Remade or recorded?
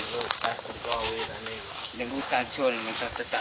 remade